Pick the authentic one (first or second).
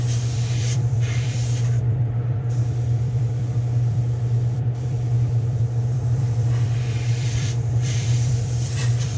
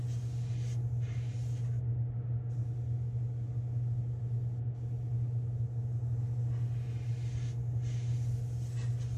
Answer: second